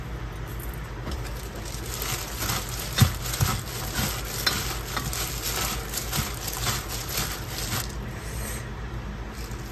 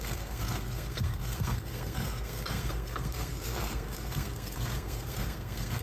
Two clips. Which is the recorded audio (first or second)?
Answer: first